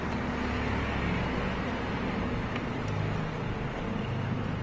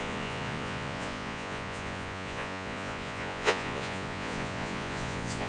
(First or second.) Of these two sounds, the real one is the first